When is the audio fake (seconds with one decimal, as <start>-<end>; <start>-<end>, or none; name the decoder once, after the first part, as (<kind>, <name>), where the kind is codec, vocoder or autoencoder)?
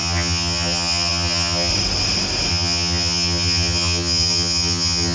0.0-1.7 (vocoder, HiFi-GAN); 2.5-5.1